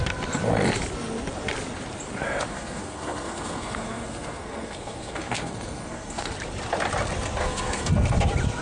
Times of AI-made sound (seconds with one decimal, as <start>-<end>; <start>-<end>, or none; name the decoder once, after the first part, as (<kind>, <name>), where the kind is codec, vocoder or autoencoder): 2.5-6.3 (codec, SNAC); 7.4-7.9